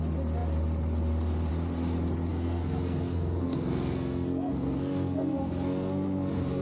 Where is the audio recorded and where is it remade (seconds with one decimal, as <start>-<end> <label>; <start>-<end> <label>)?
0.0-2.3 recorded; 2.3-6.6 remade